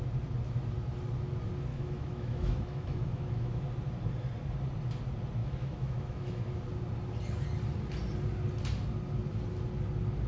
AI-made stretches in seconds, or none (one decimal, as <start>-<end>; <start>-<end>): 1.7-3.6; 5.4-6.6